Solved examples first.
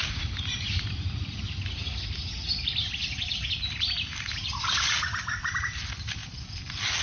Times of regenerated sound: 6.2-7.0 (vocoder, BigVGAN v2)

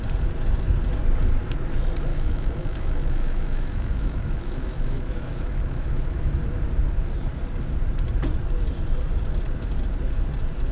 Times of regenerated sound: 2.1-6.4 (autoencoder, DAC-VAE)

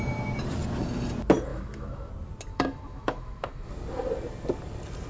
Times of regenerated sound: 1.5-2.1 (autoencoder, DAC-VAE); 2.5-3.7